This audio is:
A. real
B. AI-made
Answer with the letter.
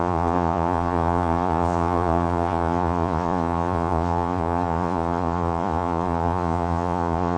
B